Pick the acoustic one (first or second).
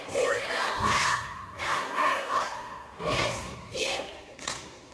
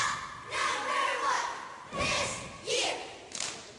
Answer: second